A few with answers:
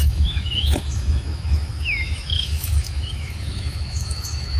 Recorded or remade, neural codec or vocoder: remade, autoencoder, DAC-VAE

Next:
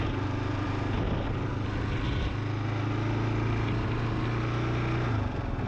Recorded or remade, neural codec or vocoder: recorded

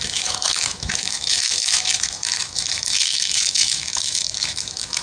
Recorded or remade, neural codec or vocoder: remade, autoencoder, DAC-VAE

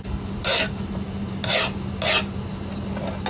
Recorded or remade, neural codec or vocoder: recorded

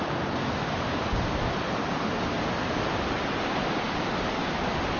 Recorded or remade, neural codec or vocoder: recorded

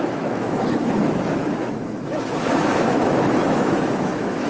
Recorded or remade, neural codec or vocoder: remade, autoencoder, DAC-VAE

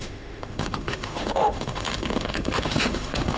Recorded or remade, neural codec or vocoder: remade, autoencoder, DAC-VAE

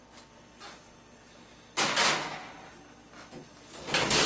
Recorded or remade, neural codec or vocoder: recorded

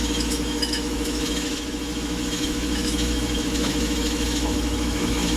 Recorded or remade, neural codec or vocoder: remade, autoencoder, DAC-VAE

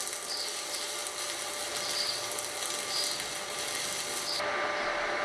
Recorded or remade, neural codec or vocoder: recorded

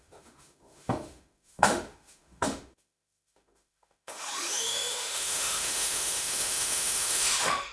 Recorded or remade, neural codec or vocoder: remade, autoencoder, DAC-VAE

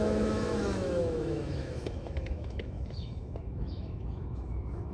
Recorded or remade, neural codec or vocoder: remade, autoencoder, DAC-VAE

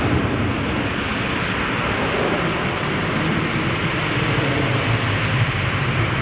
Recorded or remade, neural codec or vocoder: recorded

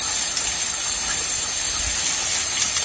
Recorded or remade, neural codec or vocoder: recorded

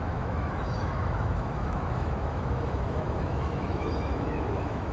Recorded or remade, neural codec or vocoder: remade, autoencoder, DAC-VAE